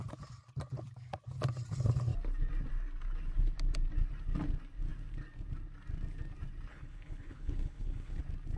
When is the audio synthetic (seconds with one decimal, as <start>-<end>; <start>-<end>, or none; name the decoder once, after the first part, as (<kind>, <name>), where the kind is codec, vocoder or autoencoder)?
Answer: 6.7-8.2 (codec, HILCodec)